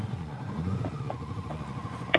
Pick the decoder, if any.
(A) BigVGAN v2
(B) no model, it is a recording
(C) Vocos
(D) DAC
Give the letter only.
C